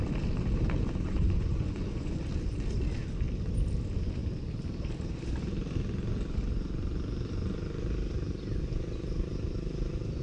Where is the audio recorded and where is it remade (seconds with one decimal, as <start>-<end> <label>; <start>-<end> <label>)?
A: 0.0-1.2 recorded; 1.2-2.2 remade; 2.2-10.2 recorded